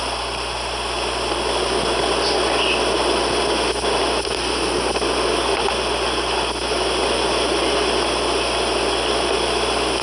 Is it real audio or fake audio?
real